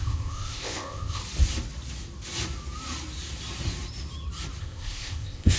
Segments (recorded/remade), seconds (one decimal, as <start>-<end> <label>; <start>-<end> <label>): 0.0-1.2 remade; 1.2-4.6 recorded; 4.6-5.6 remade